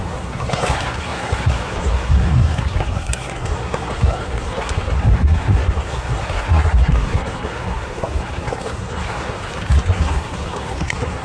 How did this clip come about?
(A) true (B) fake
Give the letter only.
B